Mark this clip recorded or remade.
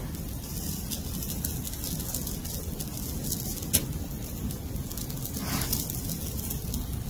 recorded